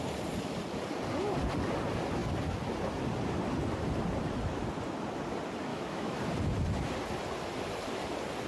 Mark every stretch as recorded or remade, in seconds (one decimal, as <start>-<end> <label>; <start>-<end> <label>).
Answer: 0.0-5.7 recorded; 5.7-6.2 remade; 6.2-8.5 recorded